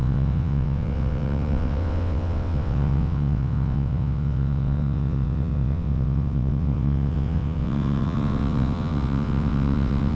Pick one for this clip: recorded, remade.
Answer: remade